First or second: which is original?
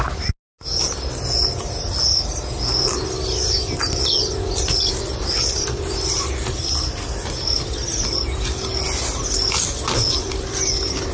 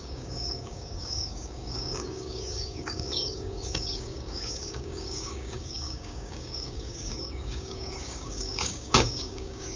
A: first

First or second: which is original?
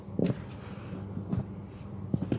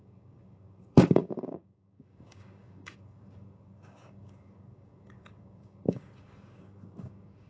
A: first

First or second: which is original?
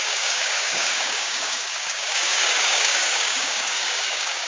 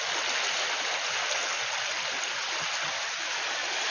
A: second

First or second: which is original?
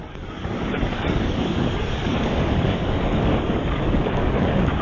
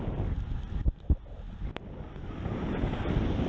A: second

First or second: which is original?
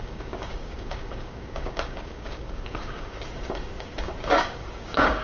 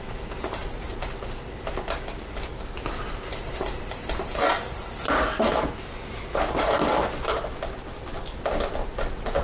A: second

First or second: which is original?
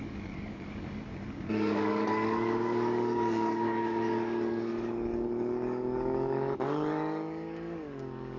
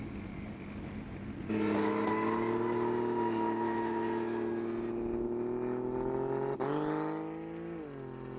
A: second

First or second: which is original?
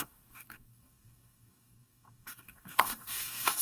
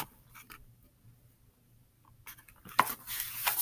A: second